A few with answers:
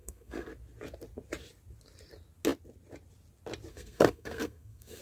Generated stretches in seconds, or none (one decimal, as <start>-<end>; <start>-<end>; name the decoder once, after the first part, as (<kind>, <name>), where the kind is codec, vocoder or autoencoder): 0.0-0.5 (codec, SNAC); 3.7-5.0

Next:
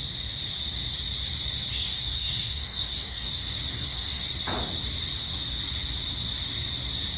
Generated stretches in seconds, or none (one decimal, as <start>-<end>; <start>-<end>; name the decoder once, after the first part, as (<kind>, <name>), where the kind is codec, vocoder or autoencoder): 1.7-3.3 (codec, DAC); 3.7-4.2

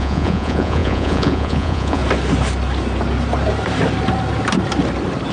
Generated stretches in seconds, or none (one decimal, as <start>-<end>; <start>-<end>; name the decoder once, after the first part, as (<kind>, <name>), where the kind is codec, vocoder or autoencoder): 0.0-2.0 (vocoder, Vocos)

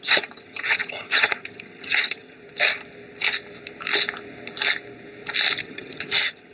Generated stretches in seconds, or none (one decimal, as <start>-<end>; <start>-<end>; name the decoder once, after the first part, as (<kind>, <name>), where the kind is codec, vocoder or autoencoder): 0.0-2.4 (vocoder, HiFi-GAN); 5.6-6.5